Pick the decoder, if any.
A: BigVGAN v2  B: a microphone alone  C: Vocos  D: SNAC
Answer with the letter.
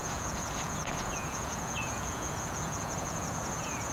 C